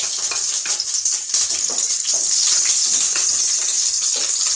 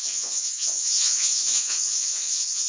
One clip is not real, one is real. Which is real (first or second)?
first